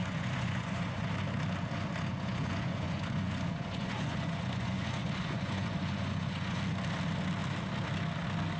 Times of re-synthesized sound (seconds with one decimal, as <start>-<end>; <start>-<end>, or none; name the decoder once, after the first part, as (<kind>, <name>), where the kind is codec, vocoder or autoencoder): 0.0-1.1 (vocoder, Vocos); 2.1-6.6